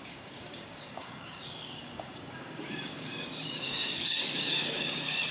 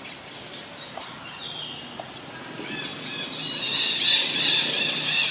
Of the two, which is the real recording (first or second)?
second